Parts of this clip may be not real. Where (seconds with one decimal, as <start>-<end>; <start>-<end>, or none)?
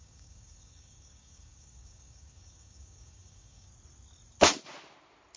0.0-3.7